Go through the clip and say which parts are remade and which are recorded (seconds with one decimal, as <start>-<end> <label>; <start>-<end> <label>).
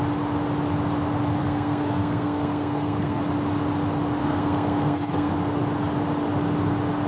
0.0-1.4 recorded; 1.4-3.2 remade; 3.2-4.2 recorded; 4.2-5.3 remade; 5.3-7.1 recorded